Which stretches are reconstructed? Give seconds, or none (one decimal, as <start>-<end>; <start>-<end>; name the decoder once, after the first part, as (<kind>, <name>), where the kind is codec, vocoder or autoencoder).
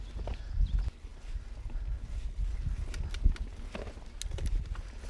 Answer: none